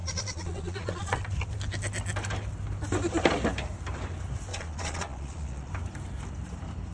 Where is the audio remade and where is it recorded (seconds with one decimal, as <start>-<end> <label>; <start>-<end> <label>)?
0.0-1.2 remade; 1.2-4.5 recorded; 4.5-5.7 remade; 5.7-6.9 recorded